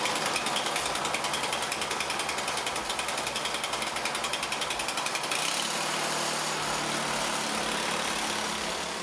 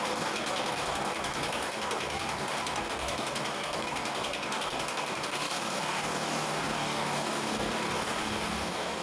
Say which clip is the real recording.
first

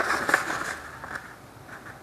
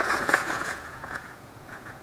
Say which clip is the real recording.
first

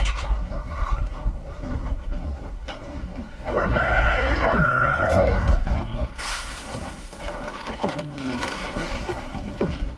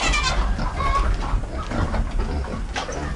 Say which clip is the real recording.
second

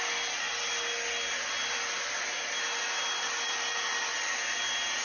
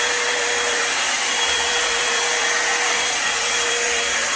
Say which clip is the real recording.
first